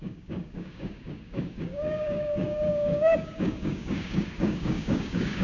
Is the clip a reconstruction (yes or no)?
yes